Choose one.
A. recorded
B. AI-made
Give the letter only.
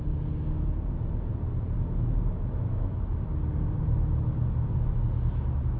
A